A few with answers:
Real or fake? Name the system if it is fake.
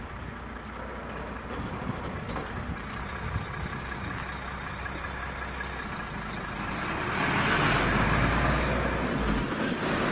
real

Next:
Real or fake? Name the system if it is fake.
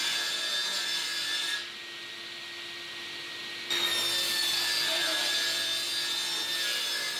real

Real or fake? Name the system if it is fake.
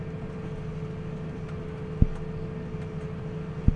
real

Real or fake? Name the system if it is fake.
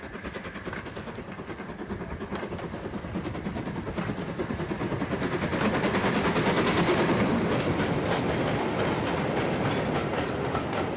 real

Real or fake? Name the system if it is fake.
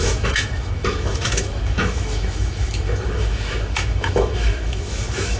fake, autoencoder, DAC-VAE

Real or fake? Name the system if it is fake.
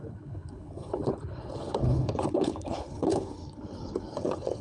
fake, codec, HILCodec